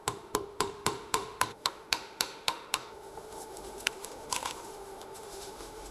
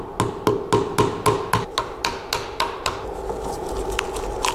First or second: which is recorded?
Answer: second